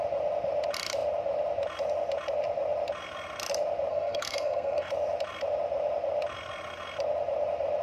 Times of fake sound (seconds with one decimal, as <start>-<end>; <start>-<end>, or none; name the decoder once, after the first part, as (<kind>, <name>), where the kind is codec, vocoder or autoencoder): 3.9-4.9 (codec, SNAC)